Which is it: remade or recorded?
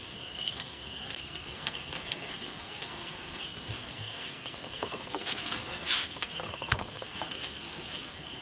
remade